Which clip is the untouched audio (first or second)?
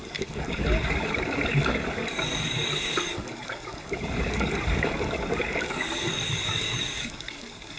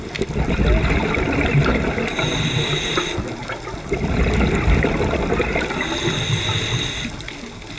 second